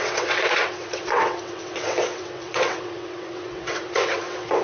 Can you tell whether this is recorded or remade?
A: remade